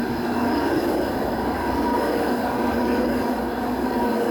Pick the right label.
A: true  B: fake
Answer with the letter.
B